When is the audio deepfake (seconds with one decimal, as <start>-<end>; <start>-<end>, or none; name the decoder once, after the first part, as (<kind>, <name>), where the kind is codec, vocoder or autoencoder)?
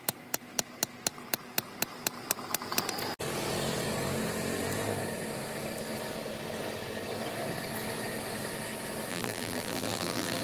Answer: 9.1-10.4 (vocoder, BigVGAN v2)